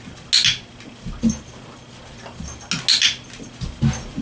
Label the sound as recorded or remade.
recorded